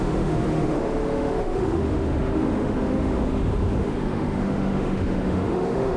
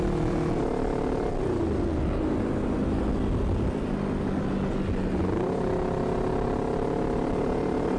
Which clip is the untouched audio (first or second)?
second